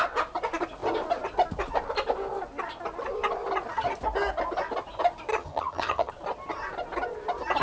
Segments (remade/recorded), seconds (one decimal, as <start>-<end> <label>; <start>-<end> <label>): 0.0-5.3 recorded; 5.3-6.1 remade; 6.1-7.6 recorded

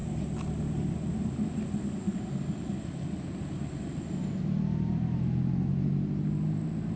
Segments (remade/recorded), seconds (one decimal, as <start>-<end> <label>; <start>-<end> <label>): 0.0-7.0 recorded

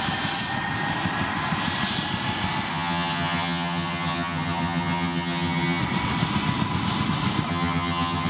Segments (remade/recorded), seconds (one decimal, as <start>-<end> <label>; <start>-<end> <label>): 0.0-2.7 recorded; 2.7-5.8 remade; 5.8-7.5 recorded; 7.5-8.3 remade

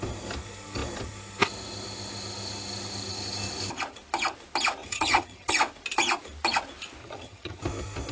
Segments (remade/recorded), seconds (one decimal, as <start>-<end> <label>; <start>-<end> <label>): 0.0-4.8 recorded; 4.8-5.5 remade; 5.5-7.0 recorded; 7.0-7.6 remade; 7.6-8.1 recorded

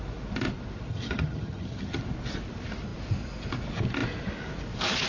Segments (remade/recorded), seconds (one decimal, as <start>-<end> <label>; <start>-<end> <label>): 0.0-0.9 recorded; 0.9-2.0 remade; 2.0-5.1 recorded

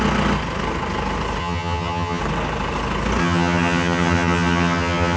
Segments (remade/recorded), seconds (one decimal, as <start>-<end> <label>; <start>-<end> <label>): 0.0-1.4 recorded; 1.4-2.2 remade; 2.2-3.2 recorded; 3.2-5.2 remade

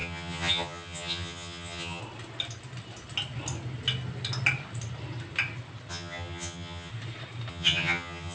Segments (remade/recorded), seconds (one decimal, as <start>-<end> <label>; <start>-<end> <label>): 0.0-2.0 remade; 2.0-5.9 recorded; 5.9-6.9 remade; 6.9-7.5 recorded; 7.5-8.3 remade

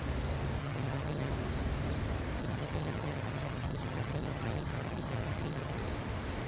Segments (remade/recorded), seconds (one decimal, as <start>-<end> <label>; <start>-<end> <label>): 0.0-0.6 recorded; 0.6-1.3 remade; 1.3-2.4 recorded; 2.4-5.8 remade; 5.8-6.5 recorded